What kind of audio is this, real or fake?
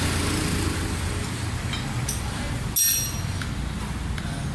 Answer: real